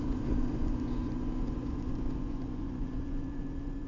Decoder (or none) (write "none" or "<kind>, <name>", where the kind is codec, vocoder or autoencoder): vocoder, Vocos